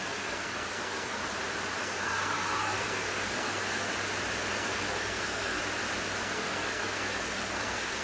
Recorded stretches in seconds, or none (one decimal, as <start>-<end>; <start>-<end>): 1.2-1.8; 3.9-4.5; 5.6-6.2